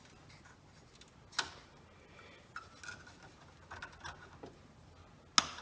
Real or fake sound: real